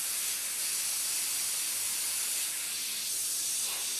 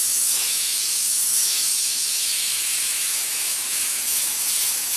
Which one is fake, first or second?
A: second